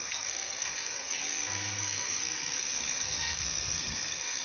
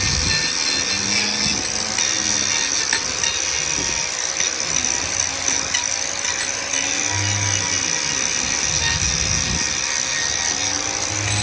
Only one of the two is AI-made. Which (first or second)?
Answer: first